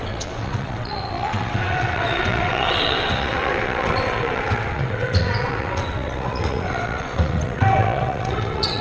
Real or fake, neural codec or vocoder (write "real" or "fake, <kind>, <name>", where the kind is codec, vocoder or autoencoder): fake, vocoder, WaveNeXt